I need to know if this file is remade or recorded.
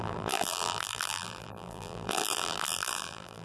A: remade